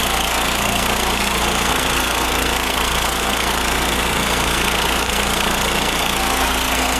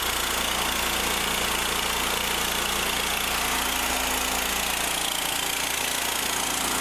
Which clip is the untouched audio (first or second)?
second